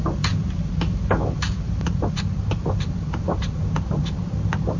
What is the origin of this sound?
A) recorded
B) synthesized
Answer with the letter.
A